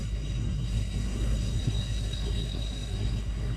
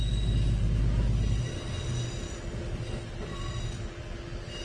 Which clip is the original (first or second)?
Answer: second